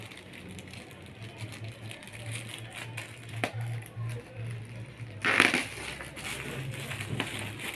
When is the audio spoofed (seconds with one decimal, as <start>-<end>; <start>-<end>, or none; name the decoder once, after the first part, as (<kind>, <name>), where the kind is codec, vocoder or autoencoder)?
none